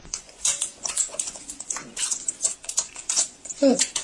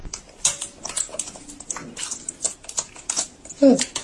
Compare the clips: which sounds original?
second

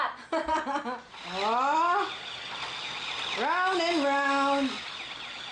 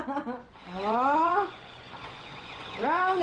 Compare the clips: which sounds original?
first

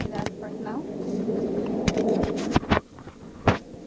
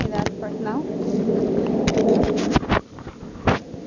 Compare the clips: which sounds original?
second